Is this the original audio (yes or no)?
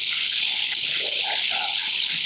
no